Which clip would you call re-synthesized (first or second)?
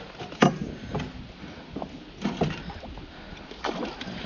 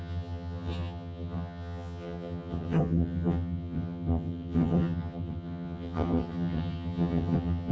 second